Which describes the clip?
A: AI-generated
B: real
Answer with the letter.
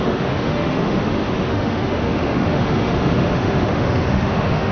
A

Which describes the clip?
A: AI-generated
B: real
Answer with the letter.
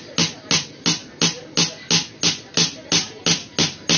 B